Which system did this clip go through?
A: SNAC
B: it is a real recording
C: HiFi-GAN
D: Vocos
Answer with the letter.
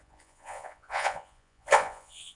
D